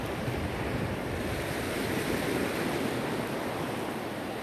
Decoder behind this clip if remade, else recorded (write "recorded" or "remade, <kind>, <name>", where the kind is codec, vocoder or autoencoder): recorded